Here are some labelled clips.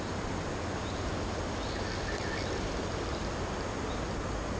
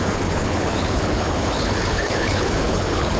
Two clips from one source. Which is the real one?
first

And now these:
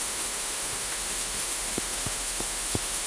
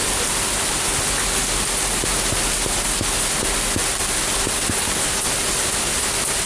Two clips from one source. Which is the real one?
second